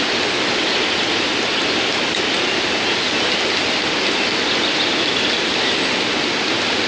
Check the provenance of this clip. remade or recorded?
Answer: recorded